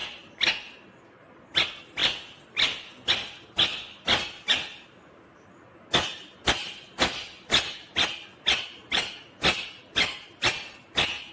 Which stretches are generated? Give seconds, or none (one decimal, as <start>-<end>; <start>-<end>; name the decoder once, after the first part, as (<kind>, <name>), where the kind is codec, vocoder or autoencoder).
none